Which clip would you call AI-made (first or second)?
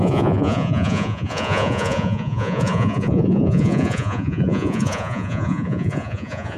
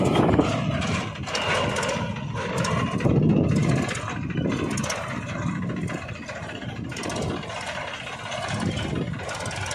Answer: first